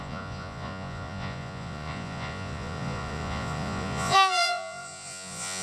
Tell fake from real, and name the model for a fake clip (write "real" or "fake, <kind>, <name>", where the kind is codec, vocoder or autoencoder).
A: fake, vocoder, Vocos